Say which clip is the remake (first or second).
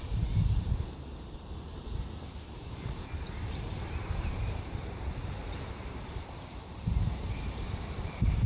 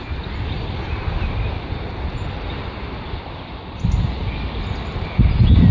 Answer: first